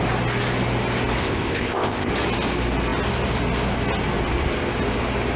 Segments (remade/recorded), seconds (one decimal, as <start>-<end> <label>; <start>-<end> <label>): 0.0-1.2 recorded; 1.2-2.1 remade; 2.1-5.4 recorded